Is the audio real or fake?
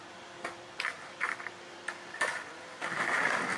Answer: fake